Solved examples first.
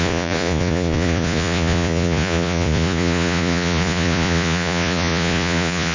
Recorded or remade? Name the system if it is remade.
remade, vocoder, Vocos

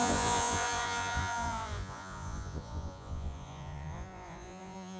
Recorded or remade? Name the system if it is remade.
remade, vocoder, Vocos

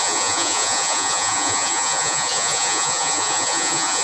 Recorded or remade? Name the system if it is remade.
remade, vocoder, Vocos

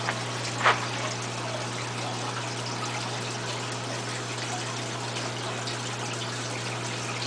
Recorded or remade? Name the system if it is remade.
recorded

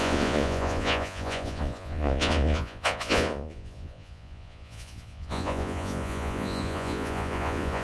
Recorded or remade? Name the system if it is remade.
remade, vocoder, Vocos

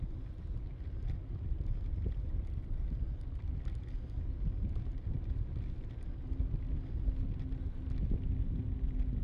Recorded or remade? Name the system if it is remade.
recorded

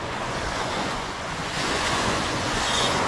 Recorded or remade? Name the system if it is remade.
remade, vocoder, Vocos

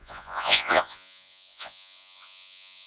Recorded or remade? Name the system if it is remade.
remade, vocoder, Vocos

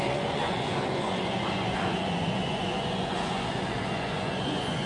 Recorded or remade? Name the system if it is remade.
remade, vocoder, Vocos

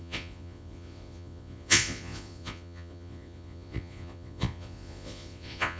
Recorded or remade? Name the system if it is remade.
remade, vocoder, Vocos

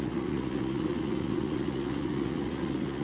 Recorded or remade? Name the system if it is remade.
remade, vocoder, Vocos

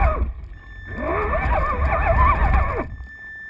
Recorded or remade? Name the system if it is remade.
recorded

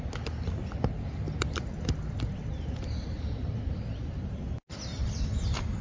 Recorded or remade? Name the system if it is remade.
recorded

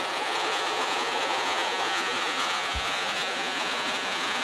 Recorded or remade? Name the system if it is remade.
remade, vocoder, Vocos